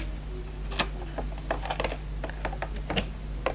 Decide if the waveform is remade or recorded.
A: recorded